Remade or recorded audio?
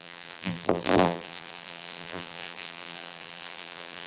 remade